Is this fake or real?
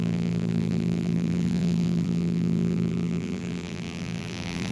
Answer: fake